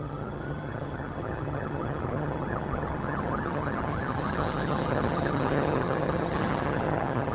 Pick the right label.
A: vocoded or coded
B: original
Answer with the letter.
A